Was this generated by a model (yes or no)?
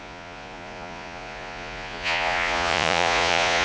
yes